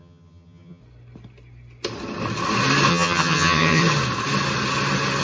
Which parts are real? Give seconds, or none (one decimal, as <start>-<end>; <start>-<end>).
0.8-2.9; 3.8-5.2